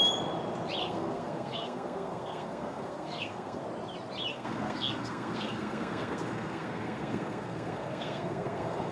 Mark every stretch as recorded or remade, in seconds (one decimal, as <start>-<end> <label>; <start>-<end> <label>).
0.0-0.8 recorded; 0.8-3.6 remade; 3.6-4.3 recorded; 4.3-8.9 remade